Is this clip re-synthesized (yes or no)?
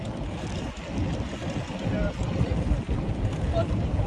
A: no